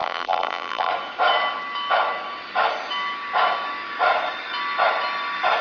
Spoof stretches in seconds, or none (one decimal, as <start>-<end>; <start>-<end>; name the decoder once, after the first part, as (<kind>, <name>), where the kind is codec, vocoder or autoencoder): 0.0-0.9 (vocoder, BigVGAN v2)